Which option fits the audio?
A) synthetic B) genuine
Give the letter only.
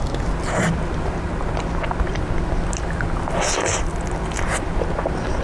B